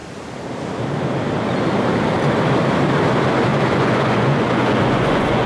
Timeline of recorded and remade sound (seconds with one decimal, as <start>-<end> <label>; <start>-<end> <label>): 0.0-3.5 recorded; 3.5-5.5 remade